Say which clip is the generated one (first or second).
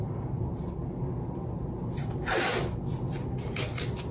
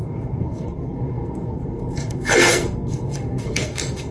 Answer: second